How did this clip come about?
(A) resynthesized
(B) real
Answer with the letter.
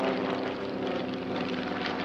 A